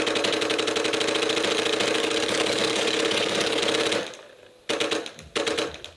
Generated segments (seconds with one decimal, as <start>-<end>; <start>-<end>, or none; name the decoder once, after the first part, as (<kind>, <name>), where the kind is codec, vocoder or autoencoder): 2.0-3.6 (codec, DAC)